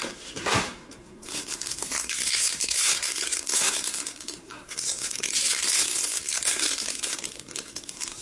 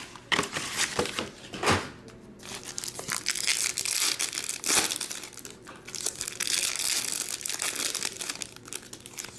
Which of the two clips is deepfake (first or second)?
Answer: first